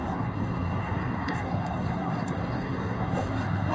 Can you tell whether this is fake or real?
fake